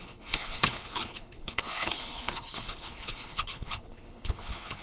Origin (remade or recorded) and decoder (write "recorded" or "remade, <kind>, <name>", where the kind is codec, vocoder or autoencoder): remade, codec, HILCodec